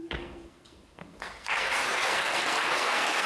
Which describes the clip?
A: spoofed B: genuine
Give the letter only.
A